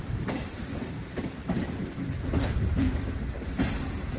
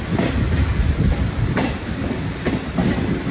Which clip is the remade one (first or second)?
first